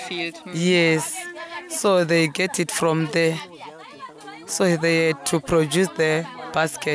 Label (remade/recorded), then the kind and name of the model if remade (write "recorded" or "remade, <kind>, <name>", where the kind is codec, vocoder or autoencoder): recorded